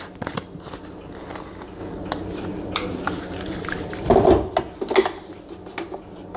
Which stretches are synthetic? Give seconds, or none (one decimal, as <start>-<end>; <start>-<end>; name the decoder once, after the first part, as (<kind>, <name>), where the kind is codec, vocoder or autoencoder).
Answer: 1.8-4.1 (vocoder, BigVGAN v2)

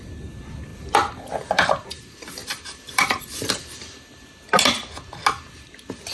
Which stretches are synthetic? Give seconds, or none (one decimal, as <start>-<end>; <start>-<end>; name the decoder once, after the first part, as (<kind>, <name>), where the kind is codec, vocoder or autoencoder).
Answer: 0.7-1.9 (vocoder, BigVGAN v2); 2.4-4.3